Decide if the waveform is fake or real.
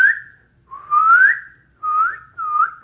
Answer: real